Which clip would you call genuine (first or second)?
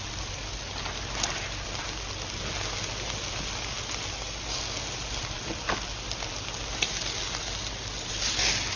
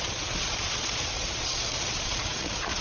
first